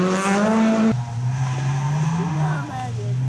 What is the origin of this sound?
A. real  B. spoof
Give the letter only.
A